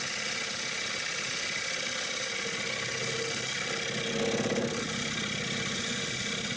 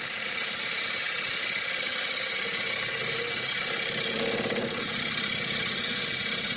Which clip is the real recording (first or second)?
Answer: first